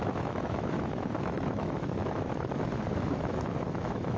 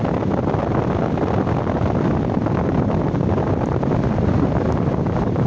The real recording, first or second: second